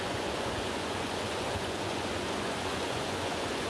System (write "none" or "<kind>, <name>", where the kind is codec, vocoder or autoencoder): vocoder, Vocos